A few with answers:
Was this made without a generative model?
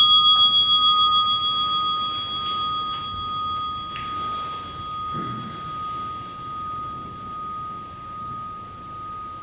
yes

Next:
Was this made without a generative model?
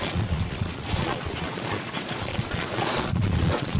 no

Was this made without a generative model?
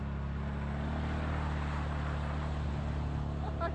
yes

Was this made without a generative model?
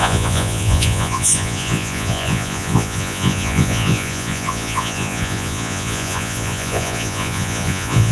no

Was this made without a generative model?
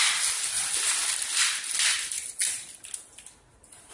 yes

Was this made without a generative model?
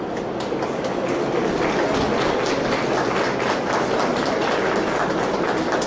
yes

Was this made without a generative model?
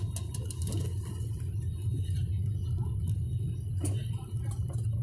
yes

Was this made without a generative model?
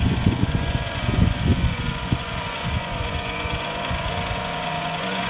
no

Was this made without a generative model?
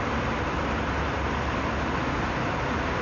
yes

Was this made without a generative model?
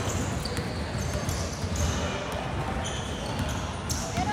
yes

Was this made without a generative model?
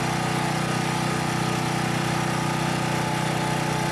yes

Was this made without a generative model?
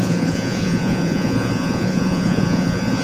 no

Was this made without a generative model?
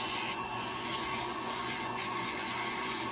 no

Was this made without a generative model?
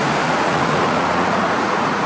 no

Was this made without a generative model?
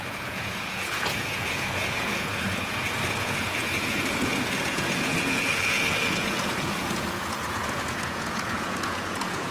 no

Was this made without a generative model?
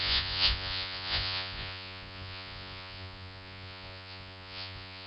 no